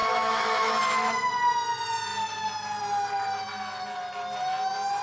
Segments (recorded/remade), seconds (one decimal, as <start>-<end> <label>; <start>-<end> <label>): 0.0-0.8 remade; 0.8-5.0 recorded